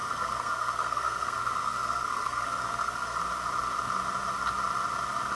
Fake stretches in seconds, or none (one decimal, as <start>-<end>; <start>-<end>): 0.0-3.2